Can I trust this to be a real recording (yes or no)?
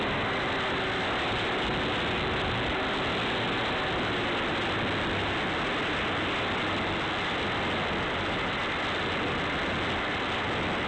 yes